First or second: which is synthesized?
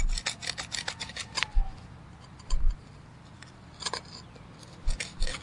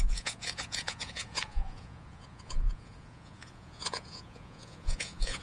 second